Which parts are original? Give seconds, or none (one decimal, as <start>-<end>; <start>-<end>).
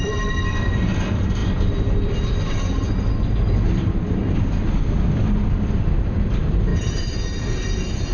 6.7-7.4